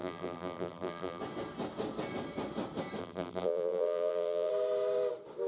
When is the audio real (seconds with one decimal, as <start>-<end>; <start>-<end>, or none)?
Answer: 1.2-3.0; 4.5-5.5